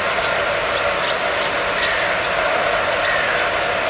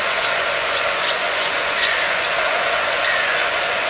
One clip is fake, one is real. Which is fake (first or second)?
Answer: second